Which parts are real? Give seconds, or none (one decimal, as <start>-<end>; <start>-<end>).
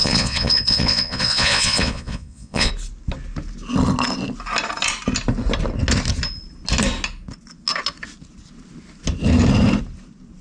2.7-10.4